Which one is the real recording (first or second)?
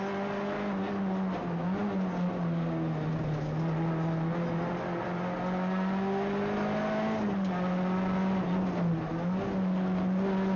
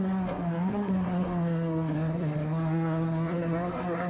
first